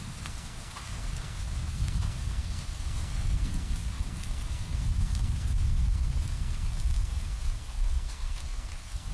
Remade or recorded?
remade